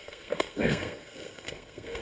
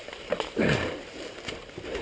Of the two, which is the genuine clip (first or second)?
second